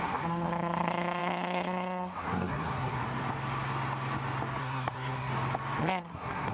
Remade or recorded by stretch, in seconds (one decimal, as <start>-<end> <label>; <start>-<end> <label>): 0.0-3.0 remade; 3.0-4.6 recorded; 4.6-5.3 remade; 5.3-5.9 recorded; 5.9-6.5 remade